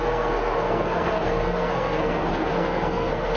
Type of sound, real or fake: fake